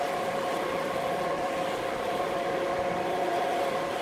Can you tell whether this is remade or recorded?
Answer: recorded